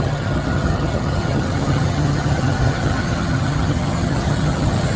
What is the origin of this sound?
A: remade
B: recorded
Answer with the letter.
A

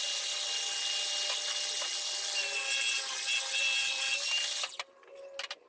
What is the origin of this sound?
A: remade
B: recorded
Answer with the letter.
B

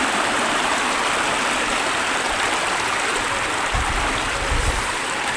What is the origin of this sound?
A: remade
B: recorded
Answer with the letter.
B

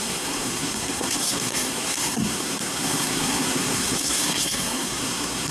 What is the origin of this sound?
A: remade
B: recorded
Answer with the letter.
A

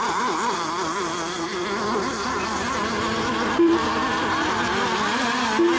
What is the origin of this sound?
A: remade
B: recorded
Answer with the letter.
A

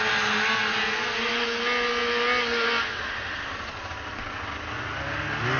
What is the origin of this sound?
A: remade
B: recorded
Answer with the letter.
B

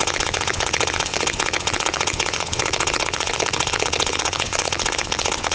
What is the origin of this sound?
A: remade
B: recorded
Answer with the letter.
A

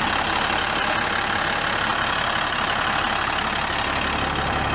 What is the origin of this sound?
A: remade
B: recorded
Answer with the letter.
B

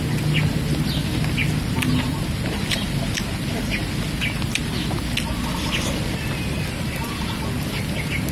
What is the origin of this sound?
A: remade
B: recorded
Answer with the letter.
B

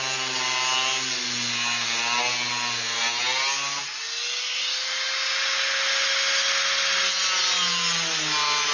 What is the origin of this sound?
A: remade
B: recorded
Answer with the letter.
B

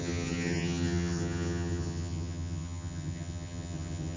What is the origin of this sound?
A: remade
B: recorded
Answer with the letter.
A